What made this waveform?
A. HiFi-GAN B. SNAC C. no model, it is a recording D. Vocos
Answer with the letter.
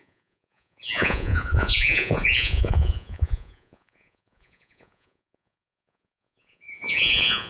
D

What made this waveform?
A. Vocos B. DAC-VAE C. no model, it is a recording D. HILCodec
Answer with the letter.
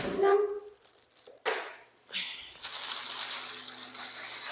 C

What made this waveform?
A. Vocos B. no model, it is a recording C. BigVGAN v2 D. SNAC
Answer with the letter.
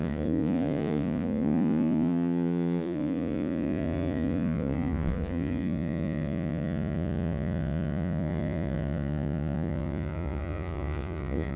A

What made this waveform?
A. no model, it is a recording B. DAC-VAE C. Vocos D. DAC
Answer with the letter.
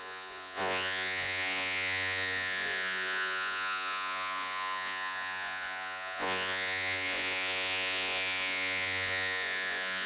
C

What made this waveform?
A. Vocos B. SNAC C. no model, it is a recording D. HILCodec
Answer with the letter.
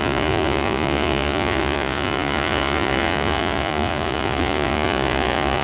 A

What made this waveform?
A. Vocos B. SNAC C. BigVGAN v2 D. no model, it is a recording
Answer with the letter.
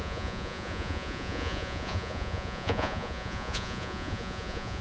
A